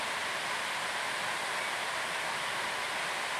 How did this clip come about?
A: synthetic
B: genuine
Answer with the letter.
B